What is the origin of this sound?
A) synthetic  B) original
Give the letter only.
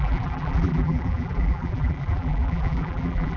A